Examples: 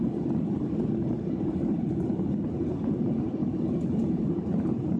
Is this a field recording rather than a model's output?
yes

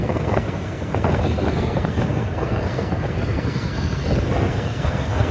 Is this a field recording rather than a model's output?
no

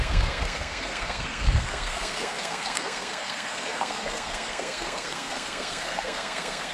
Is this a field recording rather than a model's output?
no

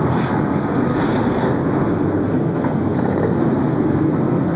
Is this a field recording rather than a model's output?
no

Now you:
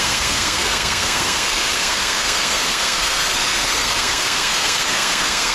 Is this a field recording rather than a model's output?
no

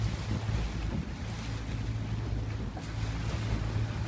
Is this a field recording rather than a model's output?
yes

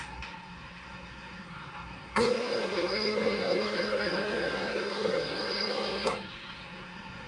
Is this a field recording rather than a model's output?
no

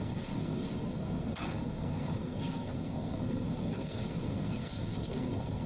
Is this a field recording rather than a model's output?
no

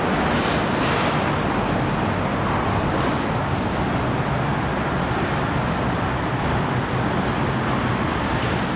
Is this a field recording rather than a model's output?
yes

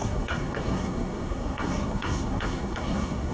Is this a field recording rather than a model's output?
no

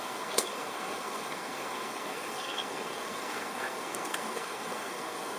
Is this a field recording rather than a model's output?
no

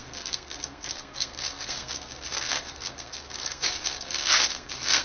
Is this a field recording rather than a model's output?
no